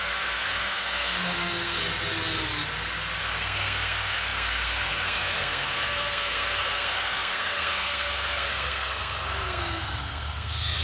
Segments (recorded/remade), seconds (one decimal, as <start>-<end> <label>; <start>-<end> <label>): 0.0-1.8 remade; 1.8-3.2 recorded; 3.2-10.8 remade